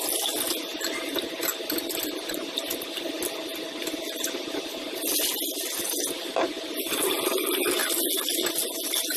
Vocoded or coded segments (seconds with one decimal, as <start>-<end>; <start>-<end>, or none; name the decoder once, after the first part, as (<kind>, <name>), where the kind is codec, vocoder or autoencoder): none